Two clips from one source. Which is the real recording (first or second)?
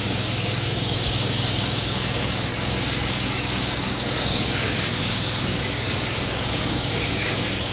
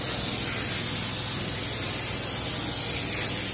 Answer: second